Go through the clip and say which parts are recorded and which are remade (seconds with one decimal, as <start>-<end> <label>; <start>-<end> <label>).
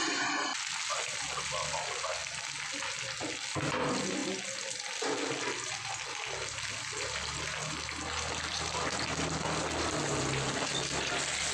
0.0-11.5 recorded